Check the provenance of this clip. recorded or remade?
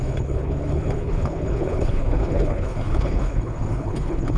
remade